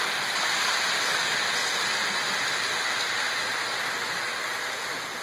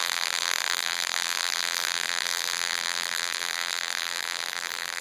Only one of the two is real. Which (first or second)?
first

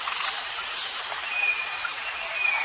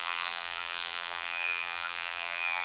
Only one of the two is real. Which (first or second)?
first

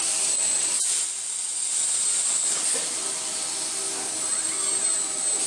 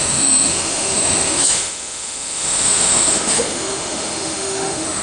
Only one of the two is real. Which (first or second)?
first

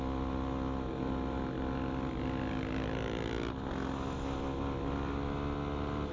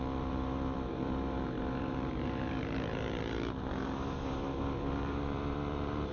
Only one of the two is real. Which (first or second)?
first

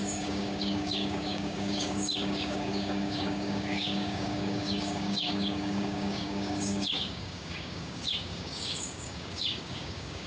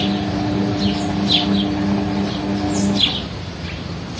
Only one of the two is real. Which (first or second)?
second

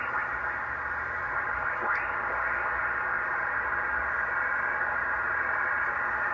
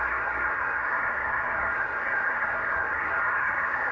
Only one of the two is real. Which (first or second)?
first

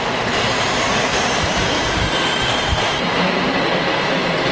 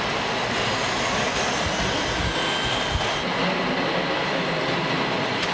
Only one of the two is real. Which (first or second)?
second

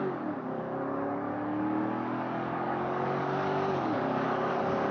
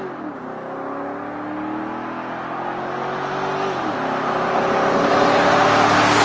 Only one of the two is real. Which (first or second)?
second